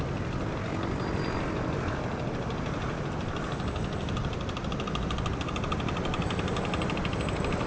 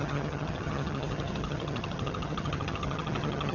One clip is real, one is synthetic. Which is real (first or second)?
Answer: first